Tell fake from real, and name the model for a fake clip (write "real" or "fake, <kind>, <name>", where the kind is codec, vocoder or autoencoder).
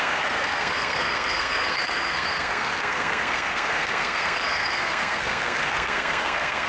fake, codec, SNAC